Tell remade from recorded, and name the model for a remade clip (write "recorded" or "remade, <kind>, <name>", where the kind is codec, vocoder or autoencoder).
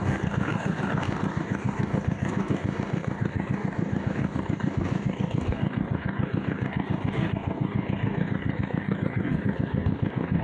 remade, codec, DAC